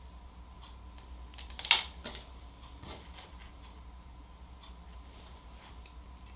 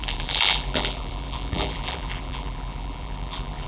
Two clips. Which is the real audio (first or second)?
first